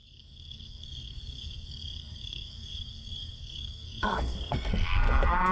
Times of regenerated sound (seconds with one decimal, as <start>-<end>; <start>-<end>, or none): 0.0-5.5